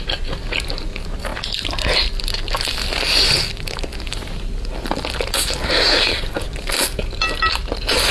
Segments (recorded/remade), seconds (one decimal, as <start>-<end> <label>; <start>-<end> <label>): 0.0-8.1 recorded